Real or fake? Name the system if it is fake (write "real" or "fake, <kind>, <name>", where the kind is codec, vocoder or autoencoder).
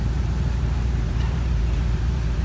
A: fake, vocoder, BigVGAN v2